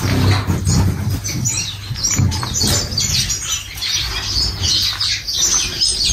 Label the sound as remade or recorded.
recorded